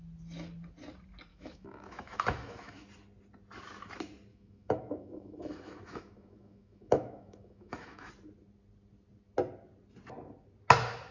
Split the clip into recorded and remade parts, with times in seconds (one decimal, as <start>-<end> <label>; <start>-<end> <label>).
0.0-1.3 recorded; 1.3-2.9 remade; 2.9-4.3 recorded; 4.3-8.1 remade; 8.1-11.1 recorded

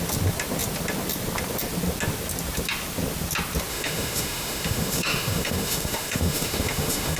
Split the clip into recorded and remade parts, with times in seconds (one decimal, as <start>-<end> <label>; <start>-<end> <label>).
0.0-3.7 recorded; 3.7-7.2 remade

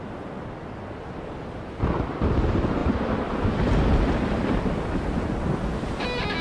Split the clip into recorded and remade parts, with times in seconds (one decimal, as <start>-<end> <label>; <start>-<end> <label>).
0.0-6.4 recorded

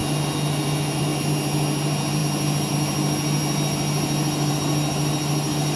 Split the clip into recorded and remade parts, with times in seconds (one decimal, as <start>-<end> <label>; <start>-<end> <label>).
0.0-5.8 recorded

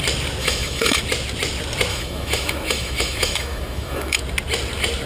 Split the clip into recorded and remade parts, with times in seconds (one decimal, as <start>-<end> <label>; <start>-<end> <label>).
0.0-0.4 recorded; 0.4-1.0 remade; 1.0-1.9 recorded; 1.9-4.2 remade; 4.2-5.1 recorded

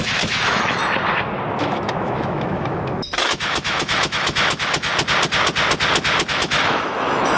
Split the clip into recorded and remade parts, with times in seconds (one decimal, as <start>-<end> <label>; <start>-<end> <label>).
0.0-0.8 remade; 0.8-1.6 recorded; 1.6-4.9 remade; 4.9-6.3 recorded; 6.3-7.4 remade

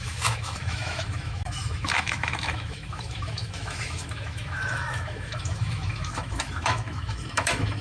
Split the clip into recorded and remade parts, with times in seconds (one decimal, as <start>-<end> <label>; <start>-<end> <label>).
0.0-7.8 remade